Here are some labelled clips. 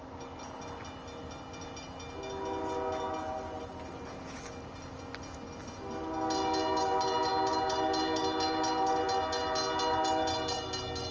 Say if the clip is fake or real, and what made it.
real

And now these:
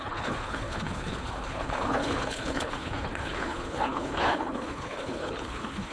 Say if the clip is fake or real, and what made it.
fake, codec, HILCodec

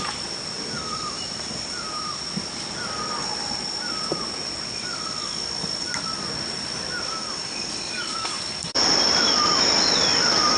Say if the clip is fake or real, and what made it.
real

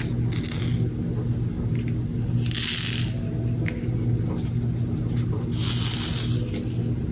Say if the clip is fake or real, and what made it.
real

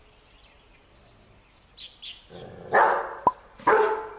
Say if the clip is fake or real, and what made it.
real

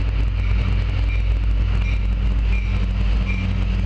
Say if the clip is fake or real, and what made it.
real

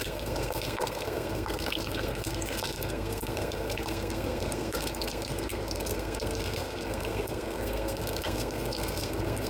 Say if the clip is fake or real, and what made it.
fake, codec, SNAC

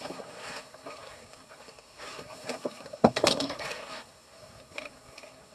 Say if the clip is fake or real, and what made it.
fake, codec, SNAC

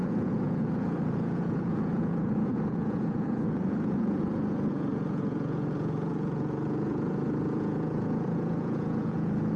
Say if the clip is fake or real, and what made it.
fake, vocoder, Vocos